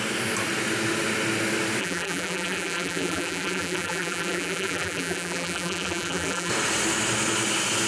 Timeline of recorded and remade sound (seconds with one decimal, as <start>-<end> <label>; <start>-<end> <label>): 0.0-1.8 recorded; 1.8-6.5 remade; 6.5-7.9 recorded